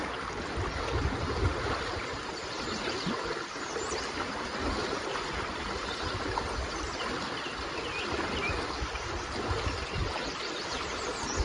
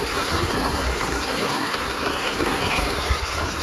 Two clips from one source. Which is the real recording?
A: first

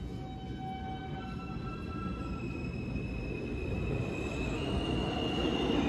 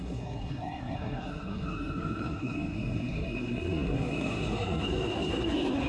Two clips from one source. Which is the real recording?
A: first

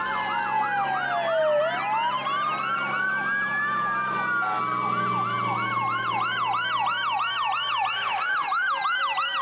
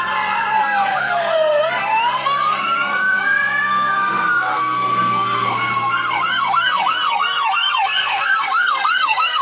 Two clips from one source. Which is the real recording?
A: first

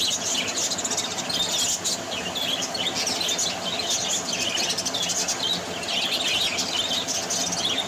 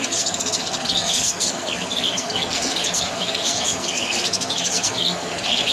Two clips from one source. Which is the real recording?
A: first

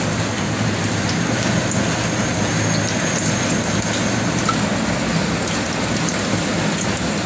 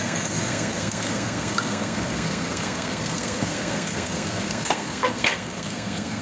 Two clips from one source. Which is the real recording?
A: first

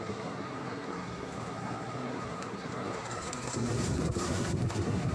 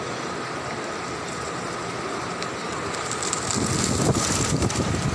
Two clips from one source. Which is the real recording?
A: second